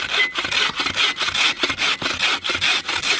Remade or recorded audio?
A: recorded